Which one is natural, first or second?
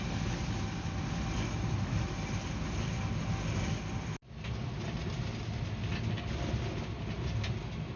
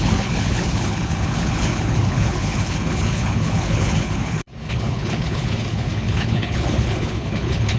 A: first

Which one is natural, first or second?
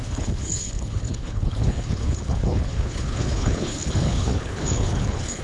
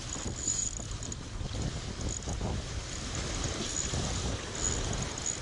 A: second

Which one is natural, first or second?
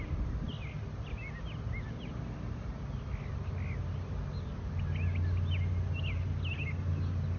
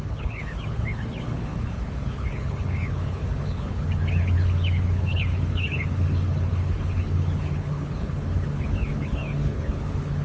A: first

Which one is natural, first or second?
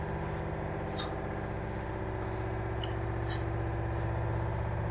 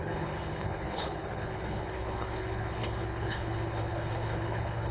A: first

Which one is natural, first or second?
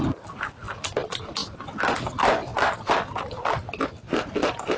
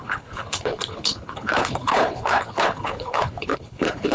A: first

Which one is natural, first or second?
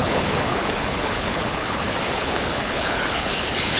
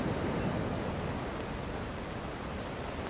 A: second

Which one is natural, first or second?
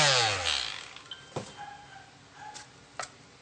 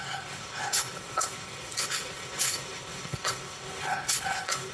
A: first